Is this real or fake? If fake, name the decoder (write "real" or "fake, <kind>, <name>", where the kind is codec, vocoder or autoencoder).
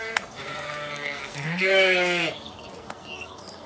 fake, codec, SNAC